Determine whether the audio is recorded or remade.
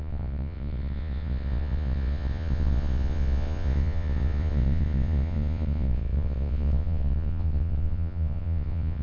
remade